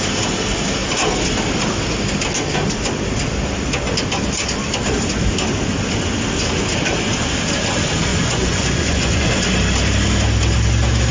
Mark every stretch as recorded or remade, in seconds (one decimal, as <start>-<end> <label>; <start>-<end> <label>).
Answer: 0.0-8.1 recorded; 8.1-9.3 remade; 9.3-11.1 recorded